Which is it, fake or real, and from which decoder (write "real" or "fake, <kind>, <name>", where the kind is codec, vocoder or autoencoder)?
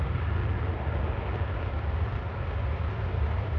real